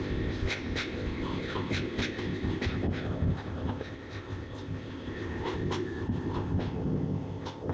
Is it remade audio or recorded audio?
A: remade